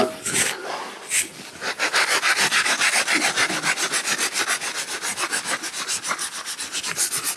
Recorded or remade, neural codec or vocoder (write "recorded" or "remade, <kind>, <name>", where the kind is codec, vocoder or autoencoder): recorded